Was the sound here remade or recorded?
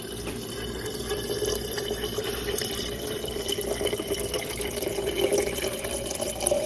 remade